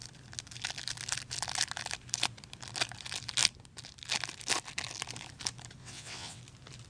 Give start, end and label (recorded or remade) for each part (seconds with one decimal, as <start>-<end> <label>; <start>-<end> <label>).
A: 0.0-5.8 recorded; 5.8-6.4 remade; 6.4-6.9 recorded